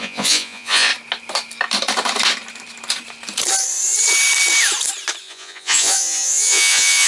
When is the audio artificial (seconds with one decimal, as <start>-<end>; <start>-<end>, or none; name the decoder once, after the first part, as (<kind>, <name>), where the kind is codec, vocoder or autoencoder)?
0.0-0.9 (vocoder, Vocos); 5.2-7.1